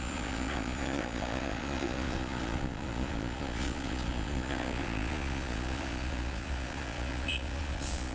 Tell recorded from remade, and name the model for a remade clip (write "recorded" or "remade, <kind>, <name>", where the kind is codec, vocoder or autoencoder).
remade, vocoder, Vocos